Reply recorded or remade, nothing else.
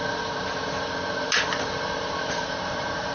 remade